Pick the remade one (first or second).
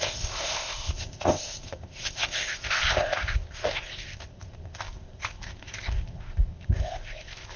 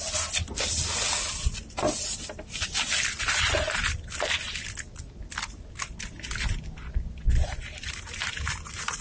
first